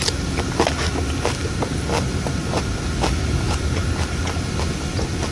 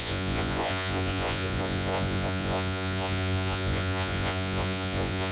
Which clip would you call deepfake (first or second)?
second